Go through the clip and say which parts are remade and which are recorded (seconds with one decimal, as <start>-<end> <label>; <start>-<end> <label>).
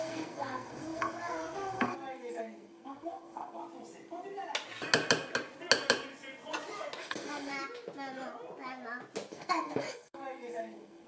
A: 0.0-3.6 remade; 3.6-7.0 recorded; 7.0-7.5 remade; 7.5-9.3 recorded; 9.3-11.1 remade